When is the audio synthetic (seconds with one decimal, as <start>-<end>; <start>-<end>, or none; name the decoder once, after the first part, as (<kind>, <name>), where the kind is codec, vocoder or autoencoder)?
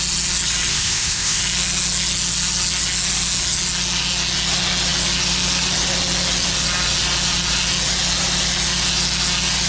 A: 0.7-1.4 (codec, ZipCodec)